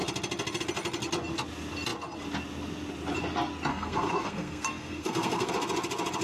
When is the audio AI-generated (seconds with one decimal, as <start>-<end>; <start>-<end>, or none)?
3.7-5.5